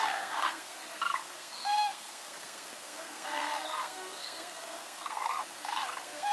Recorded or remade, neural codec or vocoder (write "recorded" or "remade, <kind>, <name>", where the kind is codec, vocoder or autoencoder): remade, codec, SNAC